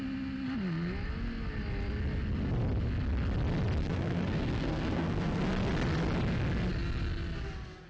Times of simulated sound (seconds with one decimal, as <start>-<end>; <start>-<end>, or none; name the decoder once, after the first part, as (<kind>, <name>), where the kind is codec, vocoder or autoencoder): 3.8-5.4 (codec, SNAC)